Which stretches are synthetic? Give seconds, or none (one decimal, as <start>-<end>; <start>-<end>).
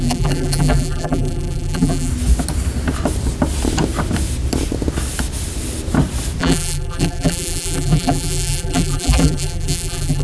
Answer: 0.0-2.1; 6.4-10.2